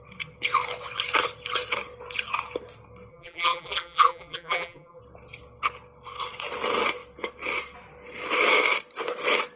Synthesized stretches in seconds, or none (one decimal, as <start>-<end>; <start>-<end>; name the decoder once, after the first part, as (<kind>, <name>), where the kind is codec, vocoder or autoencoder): 3.1-5.0 (vocoder, BigVGAN v2)